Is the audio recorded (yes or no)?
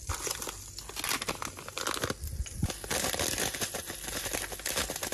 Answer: yes